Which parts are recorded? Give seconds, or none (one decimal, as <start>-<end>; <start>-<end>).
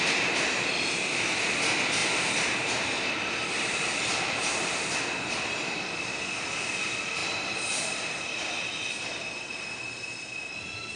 0.0-11.0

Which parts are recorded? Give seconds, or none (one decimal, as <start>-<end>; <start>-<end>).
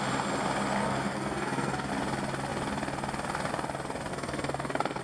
0.0-0.8; 1.9-4.1